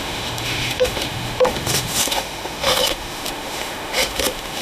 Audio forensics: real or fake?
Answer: fake